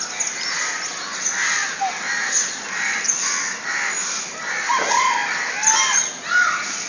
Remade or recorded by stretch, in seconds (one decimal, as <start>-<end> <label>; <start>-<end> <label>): 0.0-6.9 recorded